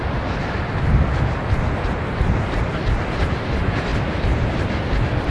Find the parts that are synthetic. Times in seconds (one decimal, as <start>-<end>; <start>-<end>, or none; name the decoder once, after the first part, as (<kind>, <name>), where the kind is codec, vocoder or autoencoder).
none